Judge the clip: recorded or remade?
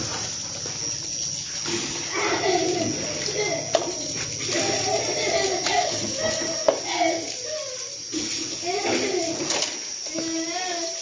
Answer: recorded